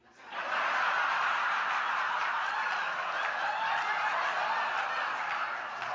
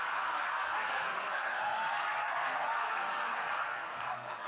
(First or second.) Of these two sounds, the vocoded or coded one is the second